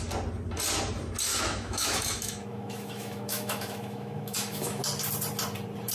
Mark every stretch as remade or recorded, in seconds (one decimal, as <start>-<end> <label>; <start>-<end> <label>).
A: 0.0-1.3 recorded; 1.3-4.8 remade; 4.8-5.9 recorded